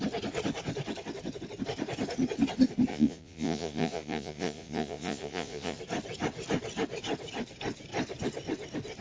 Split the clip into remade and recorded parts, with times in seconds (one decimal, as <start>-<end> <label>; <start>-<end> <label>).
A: 0.0-2.9 recorded; 2.9-5.8 remade; 5.8-9.0 recorded